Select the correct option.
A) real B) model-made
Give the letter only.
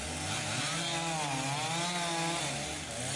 A